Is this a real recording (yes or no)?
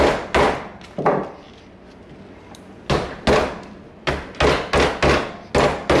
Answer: yes